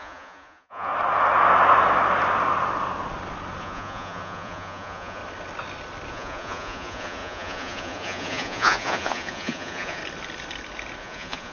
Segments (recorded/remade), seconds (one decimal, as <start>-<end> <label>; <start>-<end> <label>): 0.0-0.9 remade; 0.9-3.6 recorded; 3.6-5.2 remade; 5.2-6.1 recorded; 6.1-10.0 remade; 10.0-11.0 recorded; 11.0-11.5 remade